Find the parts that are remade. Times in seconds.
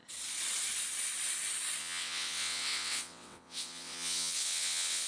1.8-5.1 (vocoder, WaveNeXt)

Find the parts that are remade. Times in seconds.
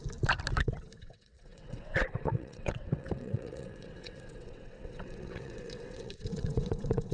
0.5-7.1 (vocoder, WaveNeXt)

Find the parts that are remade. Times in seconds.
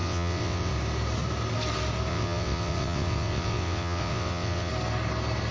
0.0-0.7 (vocoder, WaveNeXt); 2.1-4.7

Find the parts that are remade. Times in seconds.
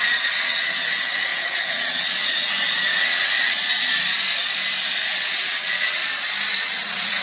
0.0-3.7 (vocoder, WaveNeXt); 5.2-6.0; 6.6-7.2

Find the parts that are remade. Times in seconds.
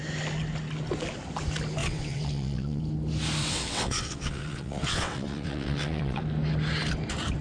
1.8-2.8 (vocoder, WaveNeXt); 3.4-6.2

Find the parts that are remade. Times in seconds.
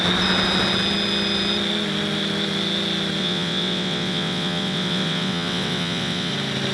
3.2-6.3 (vocoder, WaveNeXt)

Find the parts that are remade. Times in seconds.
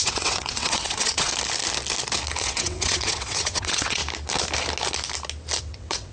0.0-1.3 (vocoder, WaveNeXt); 2.4-4.0; 5.6-6.1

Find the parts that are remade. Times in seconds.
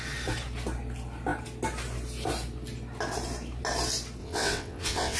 4.2-5.2 (vocoder, WaveNeXt)